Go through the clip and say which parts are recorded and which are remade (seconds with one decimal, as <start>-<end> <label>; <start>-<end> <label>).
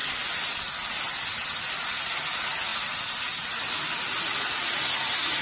0.0-5.4 recorded